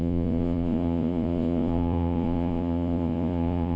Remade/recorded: remade